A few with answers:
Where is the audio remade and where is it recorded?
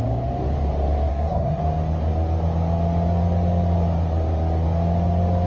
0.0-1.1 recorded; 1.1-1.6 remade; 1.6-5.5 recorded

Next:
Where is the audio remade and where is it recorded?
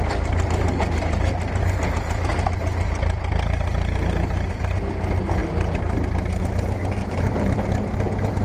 0.0-7.0 recorded; 7.0-7.7 remade; 7.7-8.4 recorded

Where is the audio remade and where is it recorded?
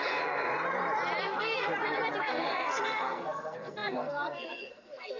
0.0-0.5 remade; 0.5-1.2 recorded; 1.2-1.7 remade; 1.7-2.2 recorded; 2.2-5.2 remade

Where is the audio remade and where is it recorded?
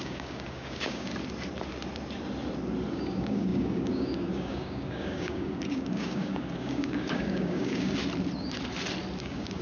0.0-1.1 remade; 1.1-2.9 recorded; 2.9-8.0 remade; 8.0-9.2 recorded; 9.2-9.6 remade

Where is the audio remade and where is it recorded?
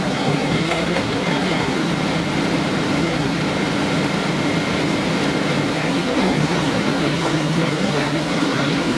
0.0-1.9 remade; 1.9-3.0 recorded; 3.0-3.4 remade; 3.4-5.7 recorded; 5.7-9.0 remade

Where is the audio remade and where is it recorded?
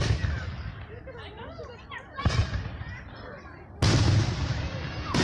0.0-3.8 remade; 3.8-4.6 recorded; 4.6-5.2 remade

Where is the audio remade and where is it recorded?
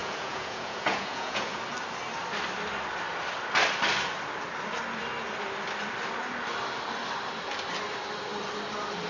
0.0-1.6 remade; 1.6-9.1 recorded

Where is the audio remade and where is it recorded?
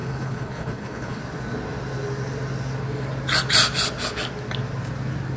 0.0-1.2 remade; 1.2-5.4 recorded